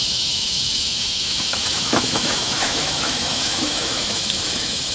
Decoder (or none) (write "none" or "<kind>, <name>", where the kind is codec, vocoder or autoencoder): autoencoder, DAC-VAE